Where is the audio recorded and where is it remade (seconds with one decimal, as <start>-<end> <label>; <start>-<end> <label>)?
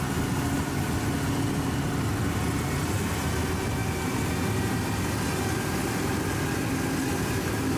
0.0-7.8 recorded